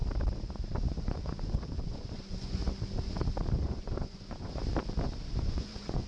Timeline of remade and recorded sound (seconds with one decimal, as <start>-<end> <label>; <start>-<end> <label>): 0.0-0.9 recorded; 0.9-2.6 remade; 2.6-3.5 recorded; 3.5-4.6 remade; 4.6-5.3 recorded; 5.3-6.1 remade